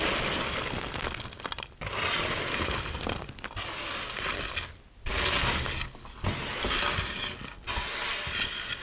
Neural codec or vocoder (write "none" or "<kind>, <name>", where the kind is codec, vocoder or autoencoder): none